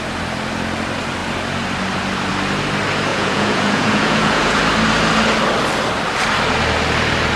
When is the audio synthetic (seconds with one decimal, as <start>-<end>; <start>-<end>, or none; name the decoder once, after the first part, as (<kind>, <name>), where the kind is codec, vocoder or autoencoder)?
3.1-4.6 (vocoder, Vocos)